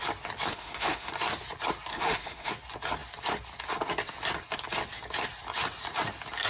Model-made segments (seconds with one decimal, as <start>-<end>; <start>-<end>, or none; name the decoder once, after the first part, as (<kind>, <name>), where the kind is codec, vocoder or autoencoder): 0.5-1.1 (autoencoder, DAC-VAE); 1.9-2.5